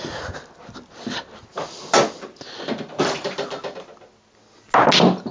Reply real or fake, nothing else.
real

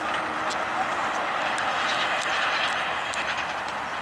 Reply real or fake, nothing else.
real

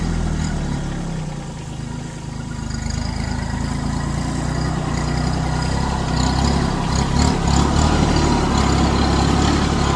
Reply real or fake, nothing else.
real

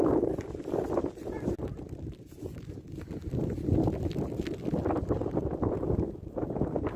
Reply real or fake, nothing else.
real